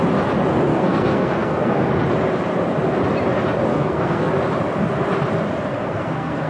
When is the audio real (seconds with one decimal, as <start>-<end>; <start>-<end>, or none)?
0.0-0.7; 1.9-3.7; 4.3-5.7